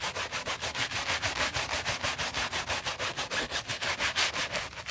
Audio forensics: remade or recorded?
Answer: recorded